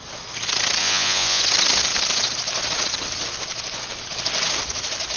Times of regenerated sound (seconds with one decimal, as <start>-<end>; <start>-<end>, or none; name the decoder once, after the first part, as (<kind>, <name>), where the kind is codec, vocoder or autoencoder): 0.8-1.4 (vocoder, Vocos)